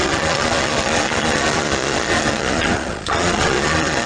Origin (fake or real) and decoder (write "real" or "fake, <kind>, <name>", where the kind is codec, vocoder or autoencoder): fake, vocoder, Vocos